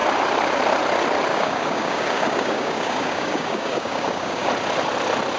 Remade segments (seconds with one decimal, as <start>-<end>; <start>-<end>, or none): 1.3-4.5